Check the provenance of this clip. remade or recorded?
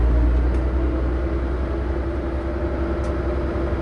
recorded